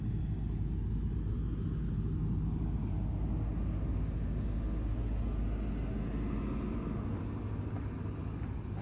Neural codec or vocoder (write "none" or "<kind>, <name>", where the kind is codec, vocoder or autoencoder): none